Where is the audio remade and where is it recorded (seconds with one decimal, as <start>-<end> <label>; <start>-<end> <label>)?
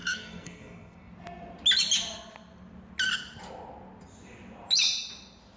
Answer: 0.0-1.1 remade; 1.1-5.6 recorded